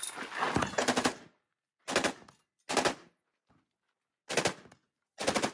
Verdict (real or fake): real